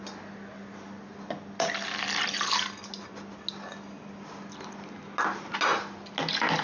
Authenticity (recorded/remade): recorded